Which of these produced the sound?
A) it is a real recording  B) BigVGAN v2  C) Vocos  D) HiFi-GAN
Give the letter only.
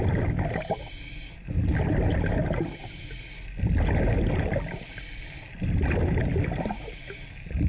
A